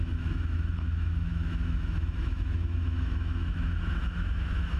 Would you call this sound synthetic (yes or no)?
yes